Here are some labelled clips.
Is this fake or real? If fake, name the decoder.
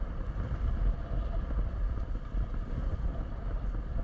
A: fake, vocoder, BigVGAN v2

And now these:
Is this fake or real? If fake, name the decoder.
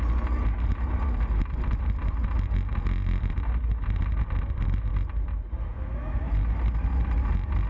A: real